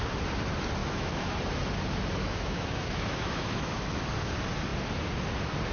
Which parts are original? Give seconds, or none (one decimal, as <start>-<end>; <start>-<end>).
0.0-0.8; 1.3-2.2; 4.0-5.7